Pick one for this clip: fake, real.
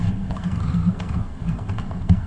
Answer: fake